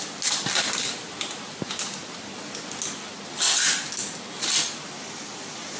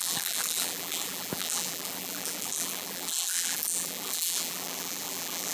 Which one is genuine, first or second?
first